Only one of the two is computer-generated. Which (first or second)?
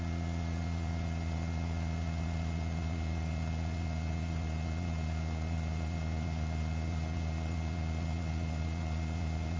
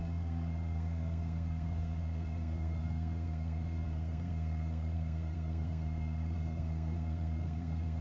second